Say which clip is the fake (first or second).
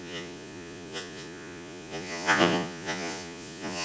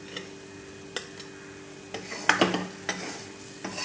first